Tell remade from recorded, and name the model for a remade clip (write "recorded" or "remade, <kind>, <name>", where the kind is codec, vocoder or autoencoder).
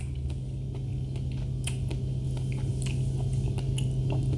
recorded